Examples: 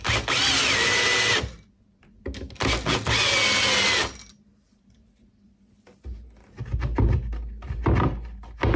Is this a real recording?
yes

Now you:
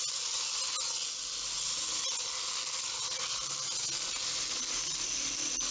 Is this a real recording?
yes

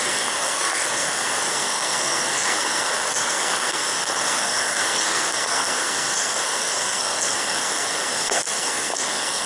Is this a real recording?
no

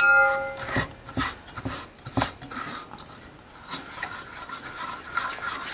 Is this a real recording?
yes